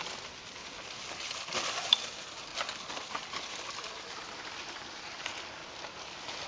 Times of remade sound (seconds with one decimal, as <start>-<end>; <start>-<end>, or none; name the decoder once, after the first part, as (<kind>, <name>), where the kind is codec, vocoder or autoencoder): none